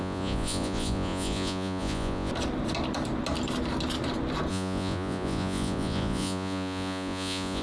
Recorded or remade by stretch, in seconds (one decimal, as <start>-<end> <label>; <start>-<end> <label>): 0.0-2.3 remade; 2.3-4.5 recorded; 4.5-7.6 remade